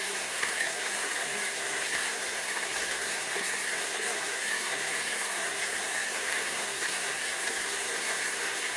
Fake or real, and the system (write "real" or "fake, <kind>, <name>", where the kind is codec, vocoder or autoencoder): fake, codec, SNAC